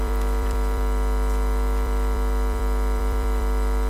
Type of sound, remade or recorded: remade